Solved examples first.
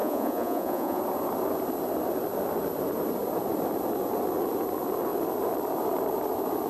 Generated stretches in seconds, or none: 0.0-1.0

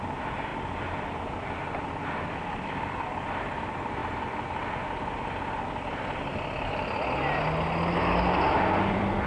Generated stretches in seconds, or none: 0.0-4.0; 8.9-9.3

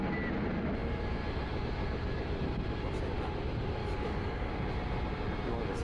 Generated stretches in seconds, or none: 3.8-4.5

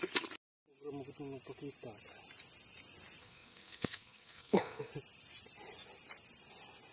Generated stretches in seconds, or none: 3.2-4.9

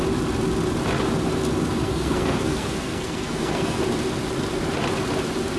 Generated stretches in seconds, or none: 1.8-3.8

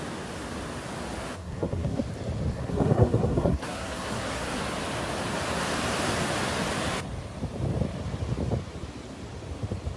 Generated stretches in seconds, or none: 1.3-2.0; 2.5-4.6

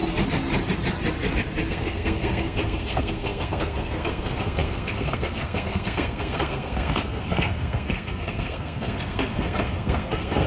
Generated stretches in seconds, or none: 1.7-10.5